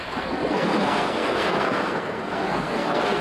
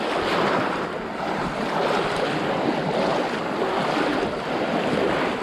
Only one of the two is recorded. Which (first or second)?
second